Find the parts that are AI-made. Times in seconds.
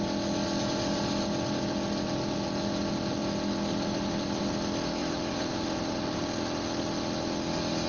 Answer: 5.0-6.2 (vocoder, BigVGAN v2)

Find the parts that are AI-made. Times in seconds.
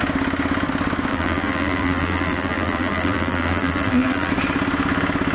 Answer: 1.1-4.3 (vocoder, BigVGAN v2)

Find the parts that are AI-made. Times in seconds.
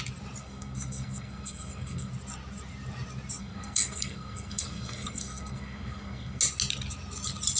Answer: 0.4-2.1 (codec, SNAC); 3.4-6.4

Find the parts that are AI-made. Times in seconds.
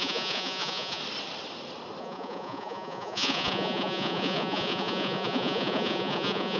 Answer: 0.0-1.0 (vocoder, Vocos); 2.0-6.6